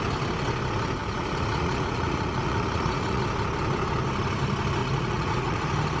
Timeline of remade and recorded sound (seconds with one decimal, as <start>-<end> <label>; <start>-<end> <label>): 0.0-1.0 recorded; 1.0-3.2 remade; 3.2-4.8 recorded; 4.8-5.6 remade; 5.6-6.0 recorded